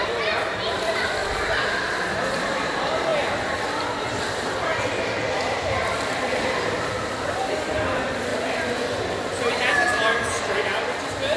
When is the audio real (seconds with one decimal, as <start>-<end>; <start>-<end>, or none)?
4.7-5.3